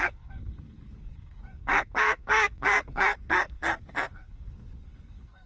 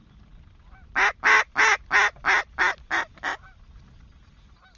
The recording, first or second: second